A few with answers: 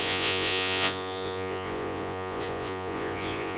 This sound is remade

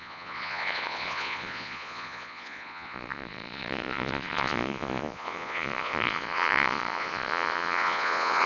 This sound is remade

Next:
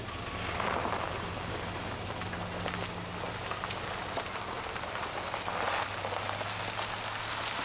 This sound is recorded